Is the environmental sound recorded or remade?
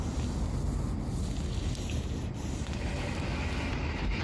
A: recorded